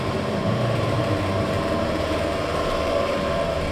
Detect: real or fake fake